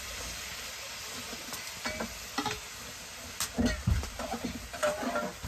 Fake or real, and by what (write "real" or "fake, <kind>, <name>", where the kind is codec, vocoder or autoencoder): real